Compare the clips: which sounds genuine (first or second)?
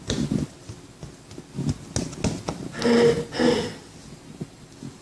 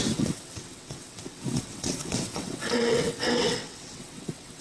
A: first